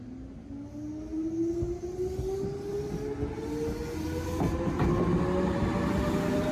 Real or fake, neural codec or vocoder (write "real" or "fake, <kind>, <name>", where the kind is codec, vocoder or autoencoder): real